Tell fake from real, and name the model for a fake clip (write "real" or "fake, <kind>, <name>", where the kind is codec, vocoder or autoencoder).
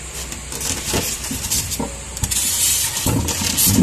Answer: real